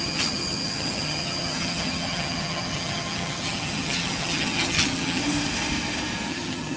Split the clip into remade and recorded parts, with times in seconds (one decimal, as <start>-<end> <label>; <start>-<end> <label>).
0.0-5.2 remade; 5.2-6.3 recorded; 6.3-6.8 remade